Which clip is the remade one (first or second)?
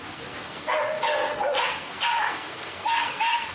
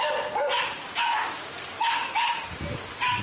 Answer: first